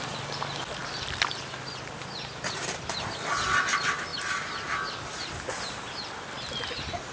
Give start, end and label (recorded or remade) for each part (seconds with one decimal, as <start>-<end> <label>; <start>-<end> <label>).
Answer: 0.0-4.1 recorded; 4.1-4.9 remade; 4.9-7.1 recorded